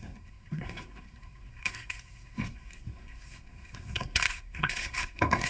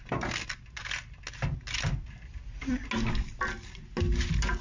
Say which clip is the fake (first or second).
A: first